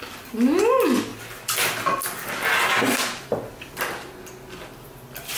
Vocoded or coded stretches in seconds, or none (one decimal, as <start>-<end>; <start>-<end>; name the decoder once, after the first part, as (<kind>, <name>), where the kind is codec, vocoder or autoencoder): none